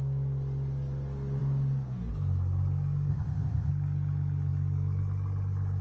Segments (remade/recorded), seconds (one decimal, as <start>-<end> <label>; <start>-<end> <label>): 0.0-3.1 recorded; 3.1-3.7 remade; 3.7-5.8 recorded